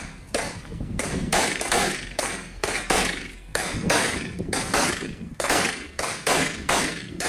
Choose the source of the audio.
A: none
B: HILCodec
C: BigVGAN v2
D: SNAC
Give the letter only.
D